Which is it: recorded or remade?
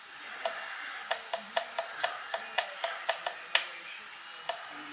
recorded